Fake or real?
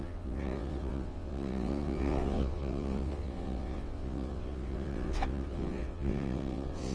fake